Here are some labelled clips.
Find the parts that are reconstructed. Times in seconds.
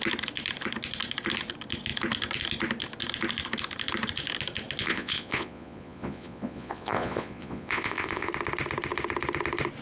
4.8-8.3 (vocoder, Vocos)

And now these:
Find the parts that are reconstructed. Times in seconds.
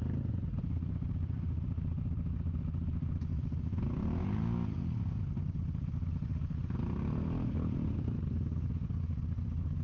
none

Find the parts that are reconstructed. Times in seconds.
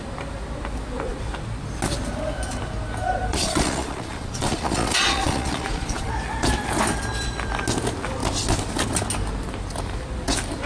3.3-6.1 (vocoder, Vocos)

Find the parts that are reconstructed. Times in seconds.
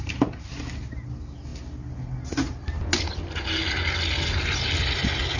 none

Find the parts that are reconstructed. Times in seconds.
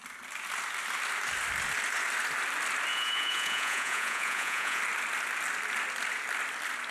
2.9-4.8 (vocoder, Vocos)